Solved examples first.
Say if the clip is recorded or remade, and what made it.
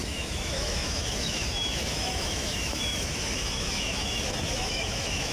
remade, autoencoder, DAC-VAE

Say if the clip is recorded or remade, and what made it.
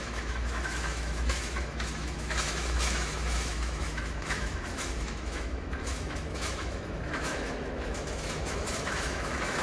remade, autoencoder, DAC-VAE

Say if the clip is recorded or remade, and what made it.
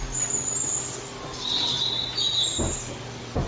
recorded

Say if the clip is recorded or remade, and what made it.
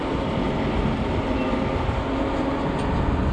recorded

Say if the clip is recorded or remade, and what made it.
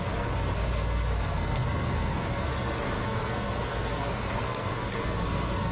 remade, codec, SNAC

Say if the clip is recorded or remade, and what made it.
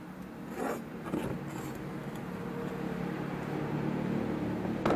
recorded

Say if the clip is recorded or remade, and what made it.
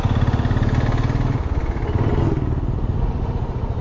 recorded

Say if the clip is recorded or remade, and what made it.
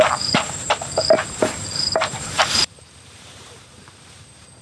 remade, vocoder, BigVGAN v2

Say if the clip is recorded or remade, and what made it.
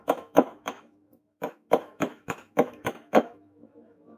remade, autoencoder, DAC-VAE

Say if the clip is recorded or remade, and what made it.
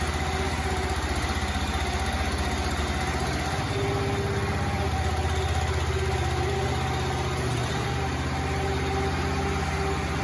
recorded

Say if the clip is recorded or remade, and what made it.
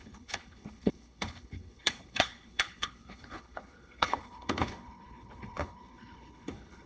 remade, codec, HILCodec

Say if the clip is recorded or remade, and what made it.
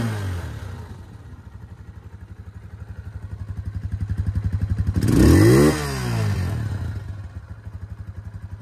recorded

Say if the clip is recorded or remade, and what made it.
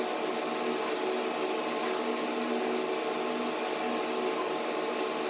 recorded